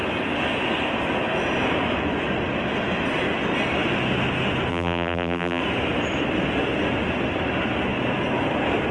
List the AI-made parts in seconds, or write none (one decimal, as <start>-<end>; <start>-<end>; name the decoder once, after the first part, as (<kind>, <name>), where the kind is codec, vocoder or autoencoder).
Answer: 4.7-5.6 (vocoder, BigVGAN v2)